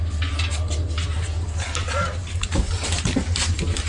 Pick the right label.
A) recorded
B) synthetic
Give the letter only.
A